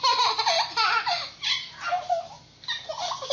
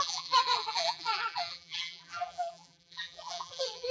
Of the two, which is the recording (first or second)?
first